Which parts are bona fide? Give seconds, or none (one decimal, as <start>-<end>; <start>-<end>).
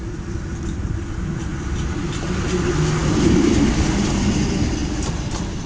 0.0-5.7